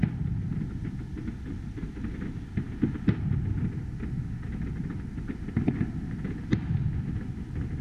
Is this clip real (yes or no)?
yes